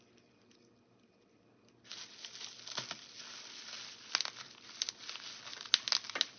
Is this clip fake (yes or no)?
no